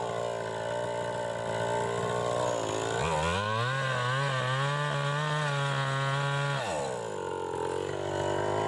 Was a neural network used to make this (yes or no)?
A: no